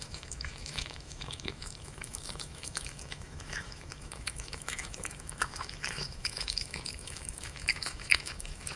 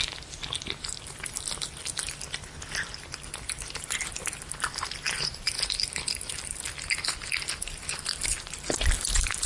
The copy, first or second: first